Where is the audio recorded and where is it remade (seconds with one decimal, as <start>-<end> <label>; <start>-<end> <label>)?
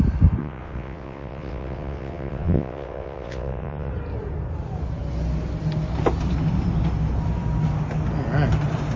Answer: 0.0-0.4 recorded; 0.4-3.9 remade; 3.9-9.0 recorded